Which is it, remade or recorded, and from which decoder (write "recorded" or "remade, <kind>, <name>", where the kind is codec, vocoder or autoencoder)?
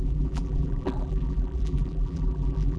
remade, vocoder, BigVGAN v2